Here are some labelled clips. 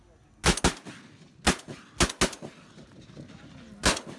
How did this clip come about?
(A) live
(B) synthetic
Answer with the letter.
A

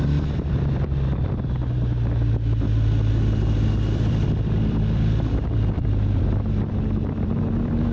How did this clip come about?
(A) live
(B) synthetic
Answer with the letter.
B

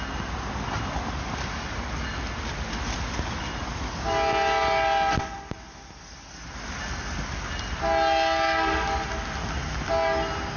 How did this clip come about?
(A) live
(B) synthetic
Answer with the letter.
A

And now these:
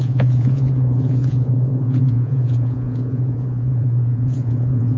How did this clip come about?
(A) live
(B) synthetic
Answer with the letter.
B